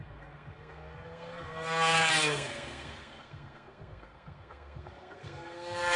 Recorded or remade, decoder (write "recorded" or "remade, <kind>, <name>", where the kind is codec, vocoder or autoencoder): remade, codec, SNAC